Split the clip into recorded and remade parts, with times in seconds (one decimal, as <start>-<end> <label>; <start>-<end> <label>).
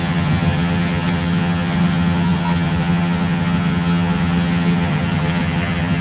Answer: 0.0-6.0 remade